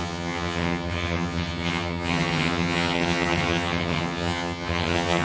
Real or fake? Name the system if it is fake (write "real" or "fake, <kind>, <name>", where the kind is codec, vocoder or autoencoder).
fake, vocoder, HiFi-GAN